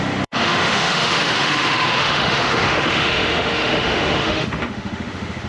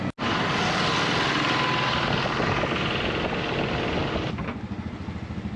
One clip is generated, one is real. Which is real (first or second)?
second